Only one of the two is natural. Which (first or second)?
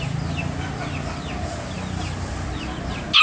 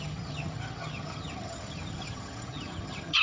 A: first